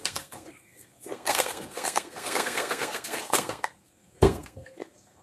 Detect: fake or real fake